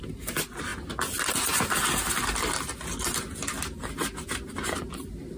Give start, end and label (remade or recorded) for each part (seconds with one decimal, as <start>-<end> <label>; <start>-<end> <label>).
0.0-5.4 recorded